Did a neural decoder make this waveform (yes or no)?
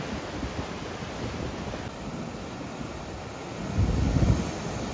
no